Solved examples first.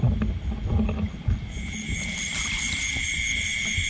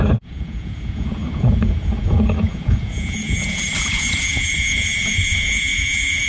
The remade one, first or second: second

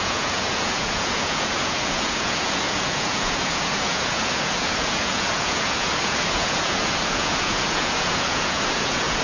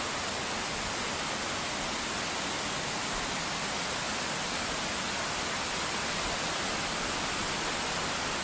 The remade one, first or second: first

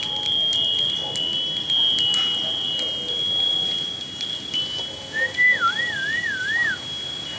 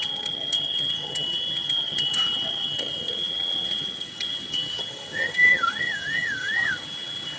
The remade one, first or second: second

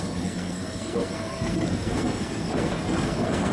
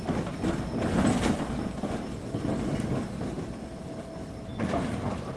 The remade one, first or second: first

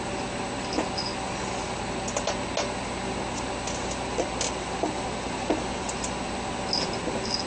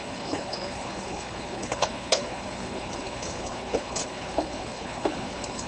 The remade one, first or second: second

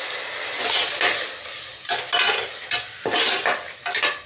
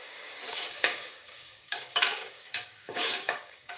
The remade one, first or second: second